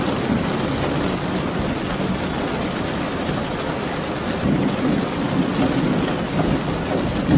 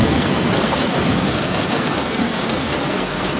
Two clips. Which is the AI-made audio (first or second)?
second